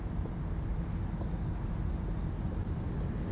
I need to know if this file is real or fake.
real